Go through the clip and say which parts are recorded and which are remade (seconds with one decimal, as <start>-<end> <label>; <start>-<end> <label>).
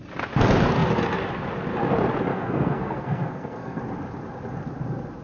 0.0-2.3 recorded; 2.3-3.8 remade; 3.8-5.2 recorded